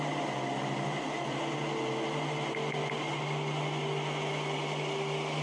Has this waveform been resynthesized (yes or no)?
no